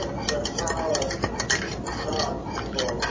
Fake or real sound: real